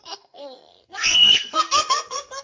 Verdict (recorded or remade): remade